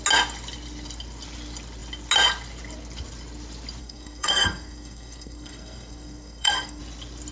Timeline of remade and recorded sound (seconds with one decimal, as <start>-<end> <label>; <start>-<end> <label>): 0.0-3.8 recorded; 3.8-6.8 remade; 6.8-7.3 recorded